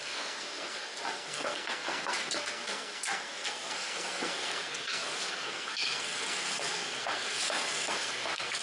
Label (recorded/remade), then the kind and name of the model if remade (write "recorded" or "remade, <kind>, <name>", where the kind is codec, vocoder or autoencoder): remade, codec, SNAC